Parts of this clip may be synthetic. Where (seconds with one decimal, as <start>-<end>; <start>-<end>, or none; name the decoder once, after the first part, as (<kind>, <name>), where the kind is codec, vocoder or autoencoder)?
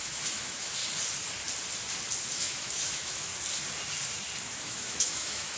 0.0-0.8 (autoencoder, DAC-VAE); 2.3-3.3; 4.6-5.6